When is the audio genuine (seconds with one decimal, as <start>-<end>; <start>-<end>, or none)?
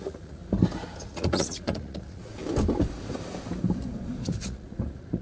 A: 0.4-1.0; 2.4-4.2